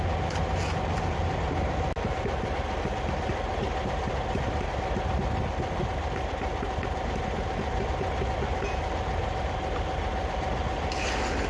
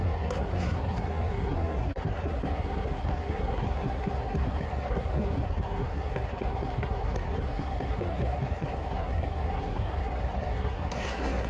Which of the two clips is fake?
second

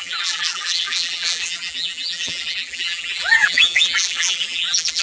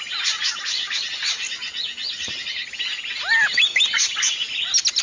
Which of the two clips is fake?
first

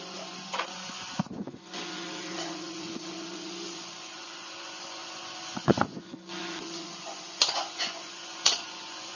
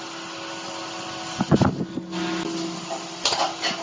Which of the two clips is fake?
first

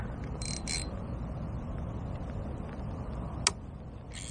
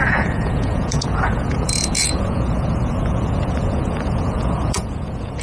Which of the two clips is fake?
second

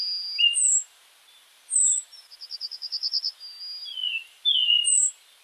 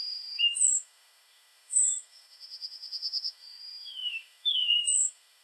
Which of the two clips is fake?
second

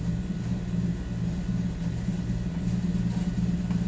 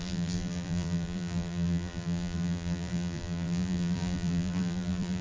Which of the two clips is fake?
second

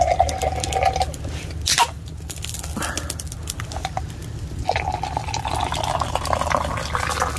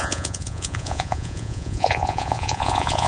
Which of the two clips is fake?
second